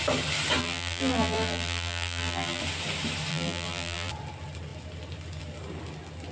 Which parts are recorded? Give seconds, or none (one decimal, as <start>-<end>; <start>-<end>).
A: 0.0-0.6; 2.6-3.3; 4.1-6.3